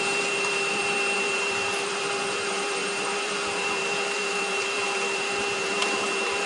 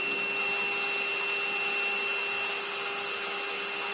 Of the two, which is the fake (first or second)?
first